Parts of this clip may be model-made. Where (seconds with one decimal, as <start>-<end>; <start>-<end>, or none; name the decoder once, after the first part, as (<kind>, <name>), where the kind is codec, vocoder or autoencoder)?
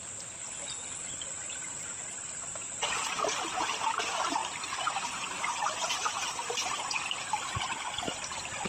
0.0-4.4 (vocoder, BigVGAN v2); 5.5-8.7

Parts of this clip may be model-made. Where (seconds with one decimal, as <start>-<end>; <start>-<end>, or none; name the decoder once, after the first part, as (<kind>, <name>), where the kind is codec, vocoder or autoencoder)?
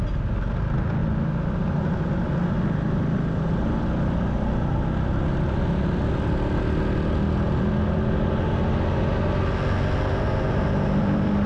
none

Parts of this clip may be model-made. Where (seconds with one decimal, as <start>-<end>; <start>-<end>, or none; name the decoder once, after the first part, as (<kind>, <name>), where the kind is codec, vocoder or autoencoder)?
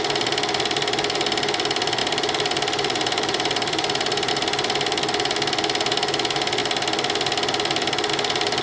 2.0-4.3 (vocoder, BigVGAN v2)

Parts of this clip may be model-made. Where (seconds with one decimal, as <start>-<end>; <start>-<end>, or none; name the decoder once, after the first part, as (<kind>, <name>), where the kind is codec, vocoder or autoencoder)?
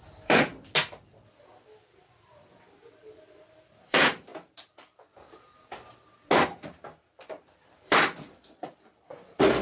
0.0-0.5 (vocoder, BigVGAN v2); 1.1-4.3; 7.4-9.6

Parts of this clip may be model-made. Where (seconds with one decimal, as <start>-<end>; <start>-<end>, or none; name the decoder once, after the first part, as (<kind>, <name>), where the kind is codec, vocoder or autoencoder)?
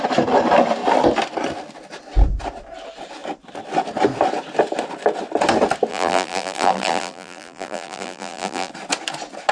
5.9-8.7 (vocoder, BigVGAN v2)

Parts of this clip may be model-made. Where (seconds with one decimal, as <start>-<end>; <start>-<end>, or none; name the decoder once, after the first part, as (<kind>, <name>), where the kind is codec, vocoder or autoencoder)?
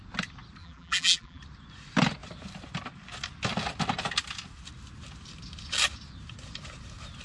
0.6-1.4 (vocoder, BigVGAN v2)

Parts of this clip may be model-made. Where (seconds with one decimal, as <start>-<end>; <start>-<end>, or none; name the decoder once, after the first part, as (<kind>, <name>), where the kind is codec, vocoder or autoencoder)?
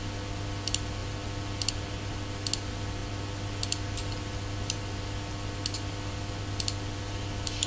none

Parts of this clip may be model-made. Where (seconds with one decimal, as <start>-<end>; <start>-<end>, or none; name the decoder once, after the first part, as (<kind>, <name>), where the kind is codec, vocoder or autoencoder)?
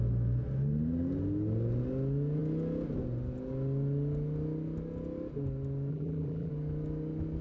5.9-6.5 (vocoder, BigVGAN v2)